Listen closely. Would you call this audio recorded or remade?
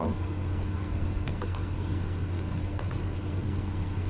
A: remade